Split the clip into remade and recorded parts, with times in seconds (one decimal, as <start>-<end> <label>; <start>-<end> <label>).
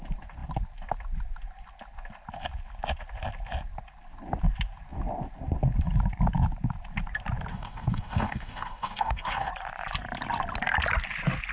0.0-7.5 recorded; 7.5-9.5 remade; 9.5-11.5 recorded